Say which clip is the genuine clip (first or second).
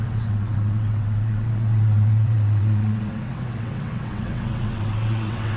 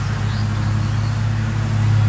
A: second